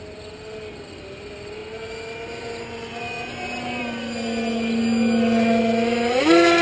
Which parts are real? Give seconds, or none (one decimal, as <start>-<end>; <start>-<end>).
0.0-6.6